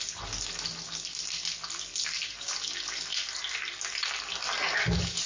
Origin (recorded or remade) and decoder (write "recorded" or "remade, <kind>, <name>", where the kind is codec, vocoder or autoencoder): recorded